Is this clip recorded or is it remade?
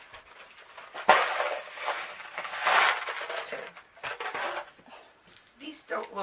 recorded